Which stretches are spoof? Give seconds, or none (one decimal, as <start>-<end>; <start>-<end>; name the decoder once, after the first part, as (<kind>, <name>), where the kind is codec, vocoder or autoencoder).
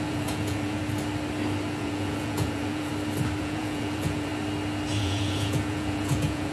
0.0-0.8 (vocoder, Vocos); 1.8-2.9; 3.4-4.3; 5.0-6.5